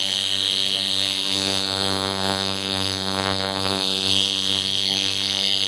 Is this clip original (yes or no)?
no